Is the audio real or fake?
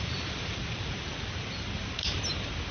fake